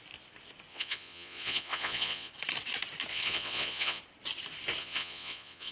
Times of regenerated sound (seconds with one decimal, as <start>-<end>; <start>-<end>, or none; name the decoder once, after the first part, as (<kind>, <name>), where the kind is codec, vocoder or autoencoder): 0.7-2.3 (vocoder, Vocos); 3.1-4.0; 4.8-5.7